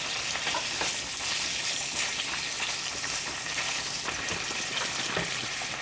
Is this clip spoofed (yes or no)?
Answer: no